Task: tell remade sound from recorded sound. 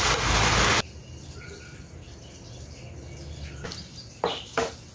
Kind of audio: recorded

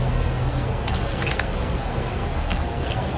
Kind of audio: remade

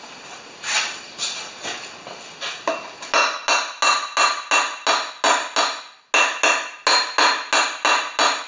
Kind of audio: recorded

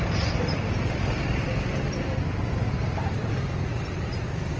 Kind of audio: recorded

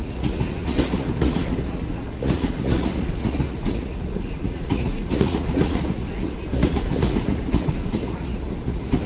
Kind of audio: remade